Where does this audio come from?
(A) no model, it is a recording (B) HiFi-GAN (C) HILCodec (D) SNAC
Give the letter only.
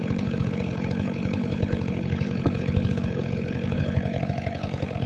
C